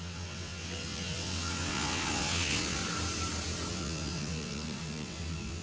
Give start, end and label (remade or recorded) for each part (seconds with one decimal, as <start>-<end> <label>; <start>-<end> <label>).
0.0-2.8 remade; 2.8-3.7 recorded; 3.7-5.6 remade